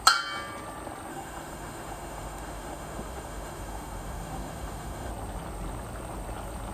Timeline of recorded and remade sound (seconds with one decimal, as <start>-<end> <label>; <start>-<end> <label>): 0.0-1.1 recorded; 1.1-5.1 remade; 5.1-6.7 recorded